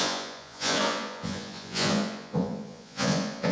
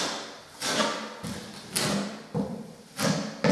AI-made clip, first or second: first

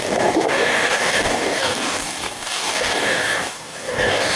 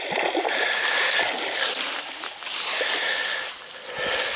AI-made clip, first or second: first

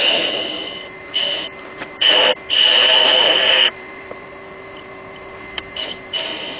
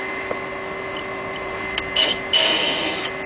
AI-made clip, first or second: first